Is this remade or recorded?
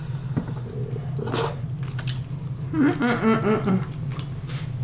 recorded